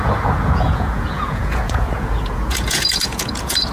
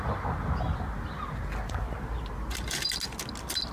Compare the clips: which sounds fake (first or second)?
first